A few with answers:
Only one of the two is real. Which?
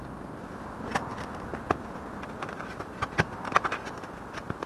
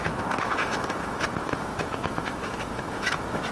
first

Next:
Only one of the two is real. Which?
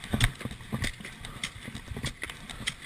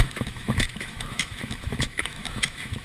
first